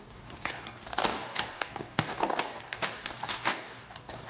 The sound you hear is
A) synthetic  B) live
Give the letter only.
A